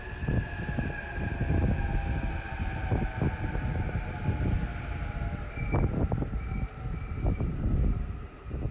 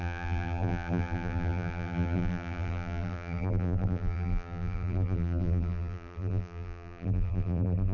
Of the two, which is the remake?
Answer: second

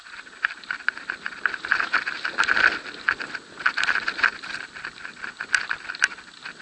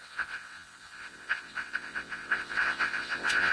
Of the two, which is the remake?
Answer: second